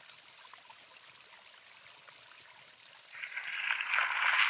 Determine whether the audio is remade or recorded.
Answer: recorded